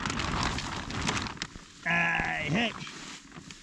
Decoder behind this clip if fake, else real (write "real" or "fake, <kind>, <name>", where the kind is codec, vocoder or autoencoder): real